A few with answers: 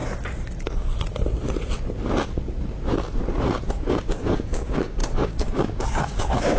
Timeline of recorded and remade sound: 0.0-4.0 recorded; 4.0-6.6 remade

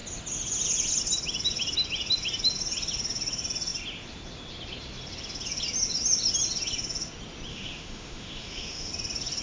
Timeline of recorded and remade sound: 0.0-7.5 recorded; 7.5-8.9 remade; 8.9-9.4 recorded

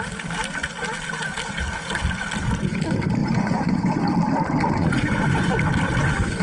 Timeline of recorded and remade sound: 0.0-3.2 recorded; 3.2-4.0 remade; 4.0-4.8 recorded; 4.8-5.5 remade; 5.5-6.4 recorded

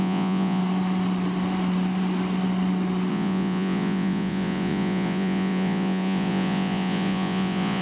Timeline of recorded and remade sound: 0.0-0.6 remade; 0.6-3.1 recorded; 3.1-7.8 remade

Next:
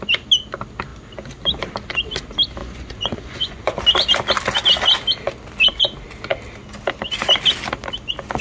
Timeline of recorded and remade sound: 0.0-2.6 recorded; 2.6-3.8 remade; 3.8-8.4 recorded

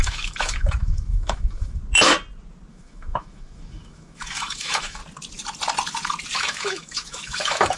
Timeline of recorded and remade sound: 0.0-1.8 remade; 1.8-2.7 recorded; 2.7-5.0 remade; 5.0-6.4 recorded; 6.4-7.8 remade

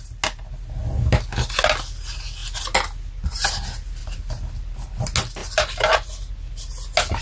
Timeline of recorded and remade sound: 0.0-4.0 recorded; 4.0-4.8 remade; 4.8-5.4 recorded; 5.4-6.3 remade; 6.3-7.2 recorded